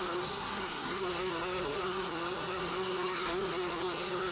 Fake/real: fake